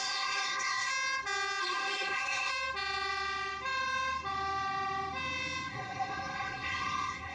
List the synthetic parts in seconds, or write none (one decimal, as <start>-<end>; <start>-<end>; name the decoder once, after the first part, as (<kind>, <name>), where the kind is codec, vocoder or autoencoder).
0.0-0.9 (codec, SNAC); 1.6-2.5; 5.7-7.3